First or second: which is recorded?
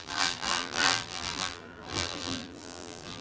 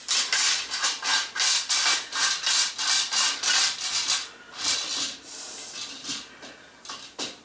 second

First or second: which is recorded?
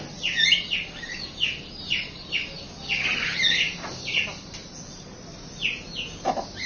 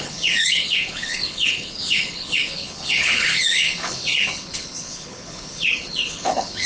first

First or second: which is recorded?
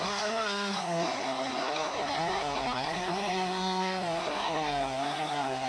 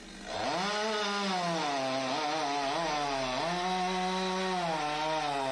second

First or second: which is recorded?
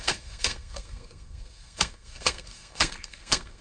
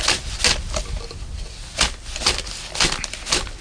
second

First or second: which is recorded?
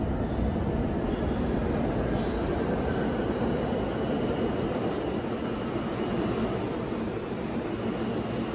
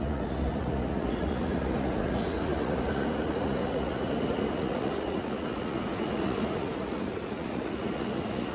first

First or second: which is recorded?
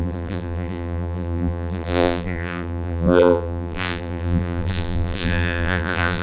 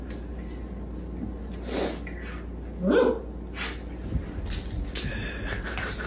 second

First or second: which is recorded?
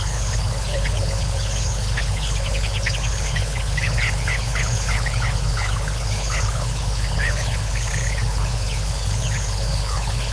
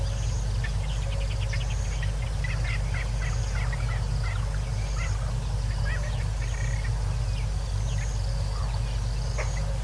second